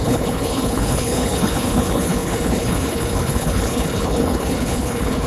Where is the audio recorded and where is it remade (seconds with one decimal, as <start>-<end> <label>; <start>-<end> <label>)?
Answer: 0.0-5.3 remade